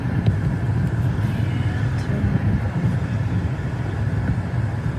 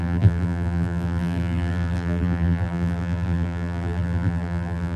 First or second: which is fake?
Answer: second